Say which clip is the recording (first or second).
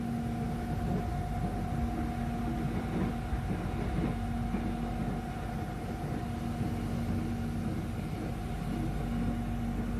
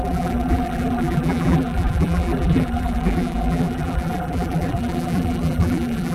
first